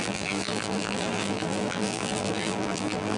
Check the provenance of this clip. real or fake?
fake